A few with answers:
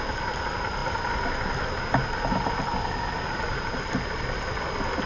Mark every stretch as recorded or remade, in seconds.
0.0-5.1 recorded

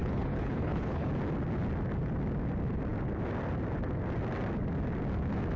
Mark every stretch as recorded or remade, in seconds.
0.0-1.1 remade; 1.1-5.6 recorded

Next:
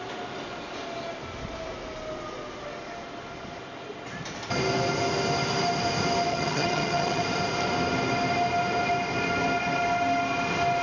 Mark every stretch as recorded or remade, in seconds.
0.0-6.3 recorded; 6.3-7.2 remade; 7.2-10.8 recorded